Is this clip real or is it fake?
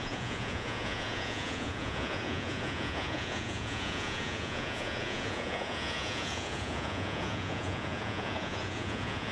fake